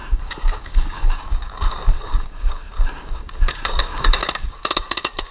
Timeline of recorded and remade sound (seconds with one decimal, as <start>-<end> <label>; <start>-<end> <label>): 0.0-5.3 remade